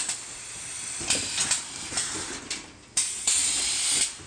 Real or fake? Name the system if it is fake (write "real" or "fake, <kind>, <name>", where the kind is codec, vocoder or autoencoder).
real